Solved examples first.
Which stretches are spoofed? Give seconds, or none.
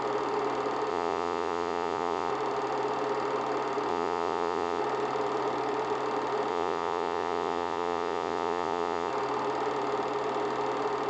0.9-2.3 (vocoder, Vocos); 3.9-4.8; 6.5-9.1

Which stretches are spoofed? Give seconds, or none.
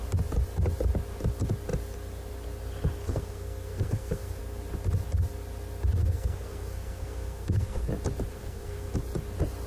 3.0-4.4 (codec, SNAC); 6.0-7.9; 8.3-8.9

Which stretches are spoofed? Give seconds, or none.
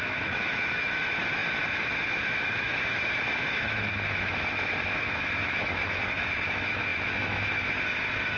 0.0-8.4 (autoencoder, DAC-VAE)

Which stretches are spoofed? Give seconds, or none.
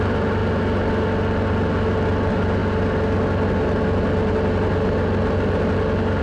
none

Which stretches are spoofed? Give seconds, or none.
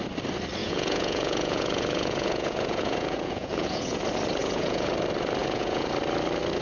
0.6-4.0 (vocoder, Vocos); 4.4-4.9; 5.4-5.9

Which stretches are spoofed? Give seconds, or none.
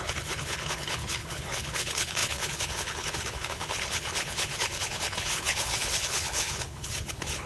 0.0-7.5 (codec, HILCodec)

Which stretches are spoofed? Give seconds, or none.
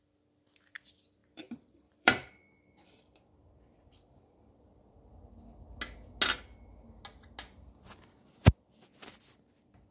1.2-5.1 (vocoder, BigVGAN v2)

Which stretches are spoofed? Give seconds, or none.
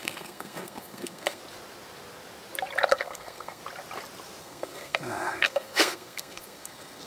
0.0-1.4 (codec, SNAC); 2.9-3.6; 4.4-7.1